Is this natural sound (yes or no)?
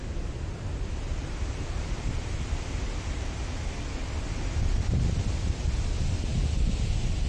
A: yes